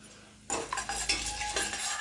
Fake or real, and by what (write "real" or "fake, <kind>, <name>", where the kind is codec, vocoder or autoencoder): real